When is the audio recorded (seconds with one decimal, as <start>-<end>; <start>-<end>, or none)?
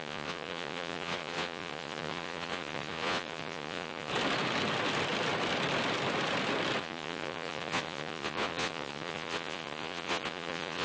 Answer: 4.1-6.8